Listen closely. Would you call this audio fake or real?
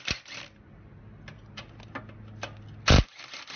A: real